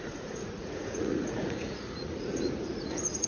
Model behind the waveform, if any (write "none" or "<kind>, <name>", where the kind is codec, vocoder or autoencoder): vocoder, Vocos